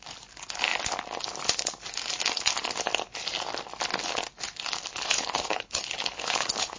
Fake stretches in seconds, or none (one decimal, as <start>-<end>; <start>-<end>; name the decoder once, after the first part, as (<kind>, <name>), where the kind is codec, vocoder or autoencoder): 4.9-6.8 (codec, HILCodec)